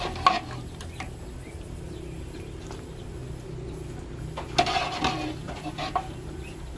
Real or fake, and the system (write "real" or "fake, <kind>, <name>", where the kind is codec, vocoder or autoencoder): real